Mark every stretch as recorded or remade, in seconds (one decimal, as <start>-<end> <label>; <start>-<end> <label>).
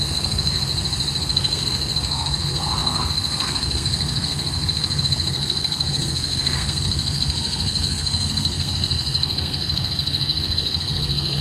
0.0-0.7 remade; 0.7-1.2 recorded; 1.2-11.4 remade